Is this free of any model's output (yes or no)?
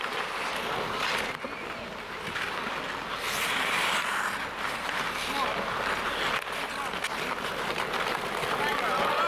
yes